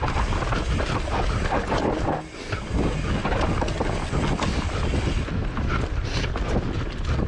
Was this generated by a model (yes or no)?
no